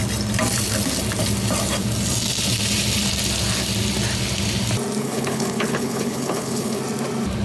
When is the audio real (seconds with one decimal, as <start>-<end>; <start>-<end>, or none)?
0.0-5.0; 6.8-7.4